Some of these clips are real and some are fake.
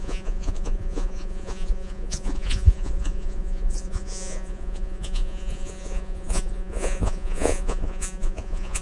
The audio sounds fake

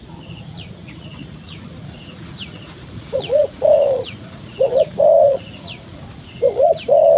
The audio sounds fake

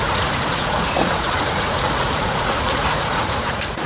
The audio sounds fake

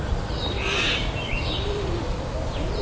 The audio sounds real